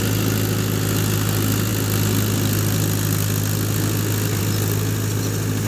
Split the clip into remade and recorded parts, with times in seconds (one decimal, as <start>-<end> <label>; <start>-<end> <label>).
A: 0.0-5.7 recorded